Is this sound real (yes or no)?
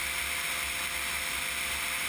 yes